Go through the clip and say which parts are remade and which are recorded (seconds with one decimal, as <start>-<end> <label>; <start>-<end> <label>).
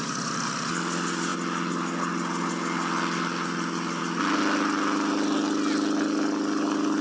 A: 0.0-7.0 recorded